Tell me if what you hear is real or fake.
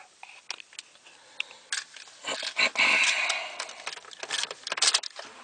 real